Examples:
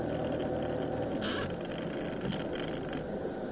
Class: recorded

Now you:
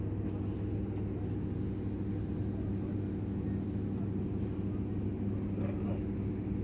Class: recorded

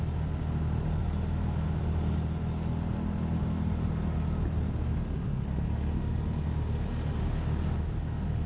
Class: recorded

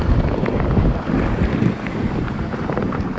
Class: recorded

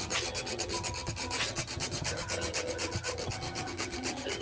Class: remade